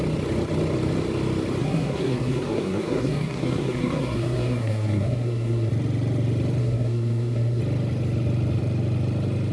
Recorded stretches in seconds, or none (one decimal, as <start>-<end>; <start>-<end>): 0.0-1.6; 5.7-6.6; 7.6-9.5